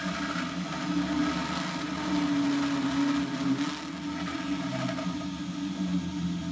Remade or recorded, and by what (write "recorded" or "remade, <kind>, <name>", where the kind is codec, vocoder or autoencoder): recorded